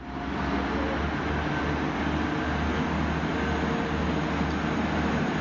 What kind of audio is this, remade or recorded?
recorded